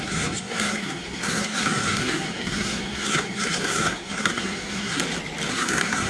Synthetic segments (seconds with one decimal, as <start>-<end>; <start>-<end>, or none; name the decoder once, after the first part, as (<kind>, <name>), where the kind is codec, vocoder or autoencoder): 0.0-5.0 (codec, SNAC); 5.5-6.1